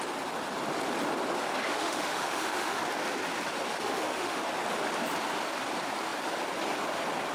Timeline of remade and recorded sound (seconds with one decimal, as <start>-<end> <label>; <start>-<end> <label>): 0.0-1.6 recorded; 1.6-2.8 remade; 2.8-3.7 recorded; 3.7-4.4 remade; 4.4-7.3 recorded